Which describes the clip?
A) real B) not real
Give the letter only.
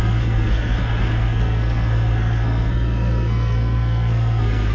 B